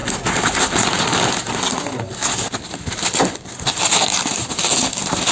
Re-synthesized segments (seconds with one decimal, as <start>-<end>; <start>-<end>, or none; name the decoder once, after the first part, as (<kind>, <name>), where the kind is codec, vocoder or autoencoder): none